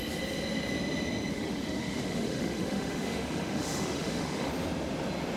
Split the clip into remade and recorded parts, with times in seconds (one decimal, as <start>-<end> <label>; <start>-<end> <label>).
0.0-1.3 recorded; 1.3-4.5 remade; 4.5-5.4 recorded